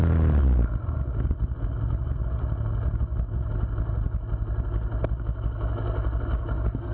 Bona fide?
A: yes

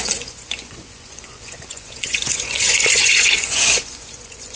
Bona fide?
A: no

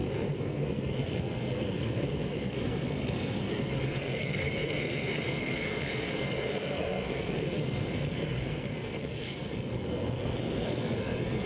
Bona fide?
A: no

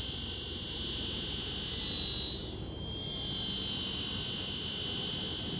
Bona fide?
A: yes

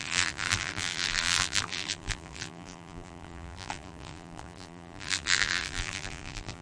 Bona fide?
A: no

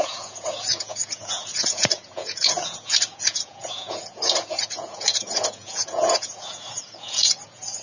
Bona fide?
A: no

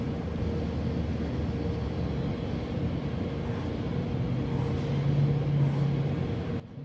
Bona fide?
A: yes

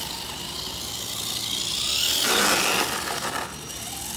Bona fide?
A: yes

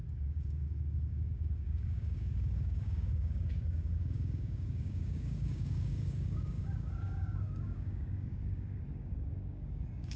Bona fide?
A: no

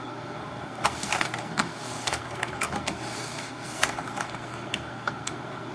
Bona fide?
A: no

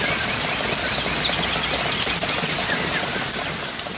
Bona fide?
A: yes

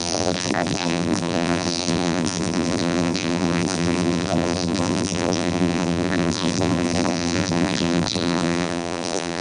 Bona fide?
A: no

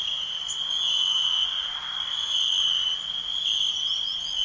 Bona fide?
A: yes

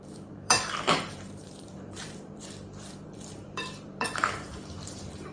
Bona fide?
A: no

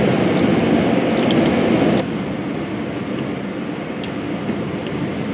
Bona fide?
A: yes